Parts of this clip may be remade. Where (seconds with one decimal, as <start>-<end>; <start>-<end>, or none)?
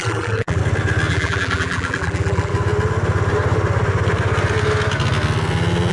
0.0-0.6; 1.1-2.5